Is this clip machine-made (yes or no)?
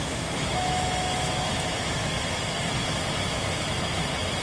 yes